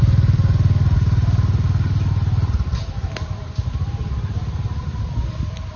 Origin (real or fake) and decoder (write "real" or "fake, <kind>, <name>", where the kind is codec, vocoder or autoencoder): real